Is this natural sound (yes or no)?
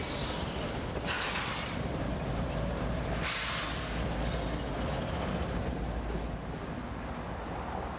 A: yes